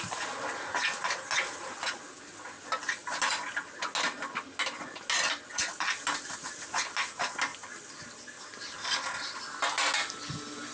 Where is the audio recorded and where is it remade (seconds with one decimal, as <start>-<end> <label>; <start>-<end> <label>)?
0.0-10.7 recorded